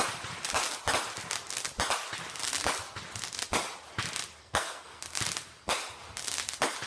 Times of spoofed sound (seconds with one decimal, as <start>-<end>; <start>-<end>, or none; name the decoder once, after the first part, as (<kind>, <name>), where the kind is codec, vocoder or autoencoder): 4.4-5.0 (codec, SNAC)